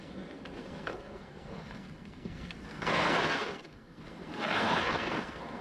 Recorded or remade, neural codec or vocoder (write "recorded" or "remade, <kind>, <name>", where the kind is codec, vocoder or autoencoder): remade, codec, SNAC